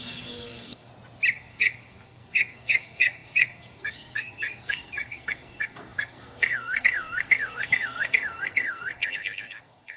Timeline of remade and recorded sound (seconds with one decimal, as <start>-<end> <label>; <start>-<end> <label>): 0.0-0.9 remade; 0.9-1.5 recorded; 1.5-10.0 remade